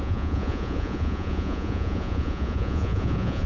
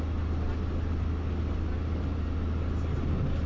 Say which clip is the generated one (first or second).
first